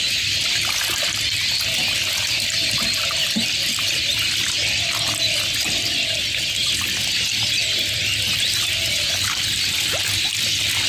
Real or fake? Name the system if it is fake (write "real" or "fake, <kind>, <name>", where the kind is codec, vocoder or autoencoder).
real